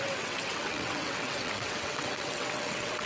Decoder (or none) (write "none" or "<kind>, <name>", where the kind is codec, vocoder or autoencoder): vocoder, WaveNeXt